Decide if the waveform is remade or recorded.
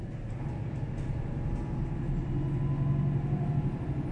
recorded